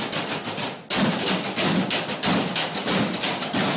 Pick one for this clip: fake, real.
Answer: real